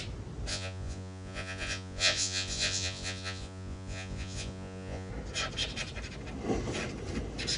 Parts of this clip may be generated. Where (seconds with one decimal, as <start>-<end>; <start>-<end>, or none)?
0.5-5.1